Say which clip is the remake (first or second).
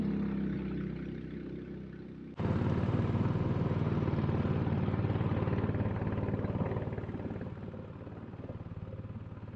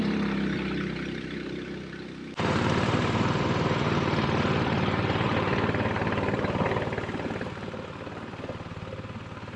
second